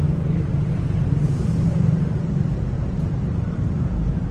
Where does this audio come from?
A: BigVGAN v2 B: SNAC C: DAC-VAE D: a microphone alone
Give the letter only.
A